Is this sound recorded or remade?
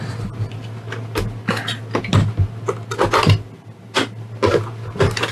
recorded